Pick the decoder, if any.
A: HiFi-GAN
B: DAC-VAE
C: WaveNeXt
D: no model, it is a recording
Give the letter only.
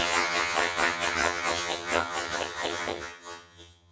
A